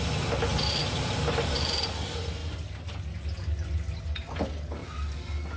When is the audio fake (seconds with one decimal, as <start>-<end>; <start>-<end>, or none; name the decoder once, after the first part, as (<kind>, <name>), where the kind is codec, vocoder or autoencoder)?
0.8-1.9 (vocoder, BigVGAN v2)